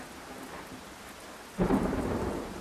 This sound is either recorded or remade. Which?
recorded